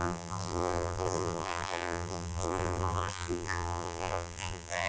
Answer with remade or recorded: remade